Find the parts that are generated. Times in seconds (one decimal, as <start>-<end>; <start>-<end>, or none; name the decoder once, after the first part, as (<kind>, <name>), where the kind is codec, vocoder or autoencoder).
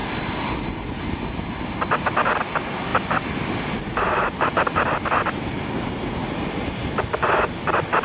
none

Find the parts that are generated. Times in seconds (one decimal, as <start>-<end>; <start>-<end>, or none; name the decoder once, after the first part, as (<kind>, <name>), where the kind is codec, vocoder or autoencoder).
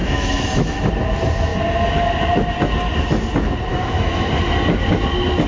0.0-0.9 (autoencoder, DAC-VAE); 3.7-4.3